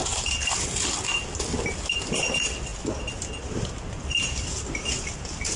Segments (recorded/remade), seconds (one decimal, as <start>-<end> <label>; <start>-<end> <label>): 0.0-5.6 recorded